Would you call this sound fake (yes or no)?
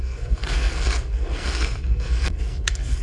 yes